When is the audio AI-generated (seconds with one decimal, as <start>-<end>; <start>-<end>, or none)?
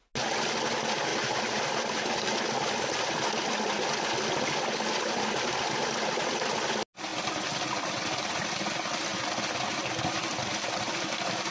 1.1-2.2